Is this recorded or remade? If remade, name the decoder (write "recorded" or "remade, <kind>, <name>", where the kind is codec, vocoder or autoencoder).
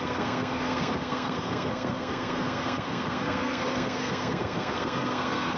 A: remade, codec, SNAC